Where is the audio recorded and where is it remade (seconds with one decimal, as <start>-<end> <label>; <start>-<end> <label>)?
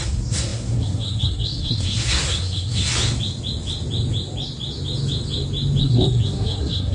0.0-2.9 remade; 2.9-5.8 recorded; 5.8-6.9 remade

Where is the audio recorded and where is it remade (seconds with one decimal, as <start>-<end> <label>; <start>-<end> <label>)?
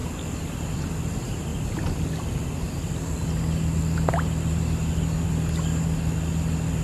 0.0-6.8 recorded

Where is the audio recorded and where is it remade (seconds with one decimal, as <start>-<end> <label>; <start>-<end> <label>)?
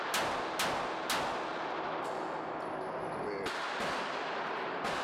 0.0-5.0 recorded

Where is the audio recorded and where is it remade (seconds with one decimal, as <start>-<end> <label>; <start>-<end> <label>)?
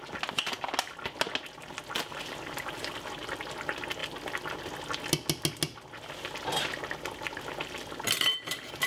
0.0-8.9 recorded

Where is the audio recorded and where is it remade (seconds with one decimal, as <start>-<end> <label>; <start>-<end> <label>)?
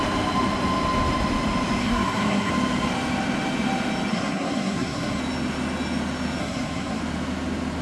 0.0-1.8 recorded; 1.8-2.5 remade; 2.5-4.1 recorded; 4.1-5.2 remade; 5.2-6.4 recorded; 6.4-7.0 remade; 7.0-7.8 recorded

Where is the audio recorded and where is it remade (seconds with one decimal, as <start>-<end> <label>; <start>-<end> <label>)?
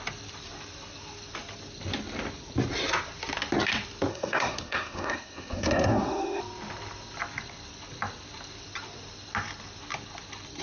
0.0-4.1 recorded; 4.1-6.4 remade; 6.4-10.6 recorded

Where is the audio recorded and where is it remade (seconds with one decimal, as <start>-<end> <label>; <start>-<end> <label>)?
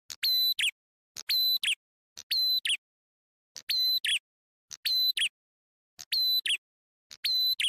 0.0-7.7 recorded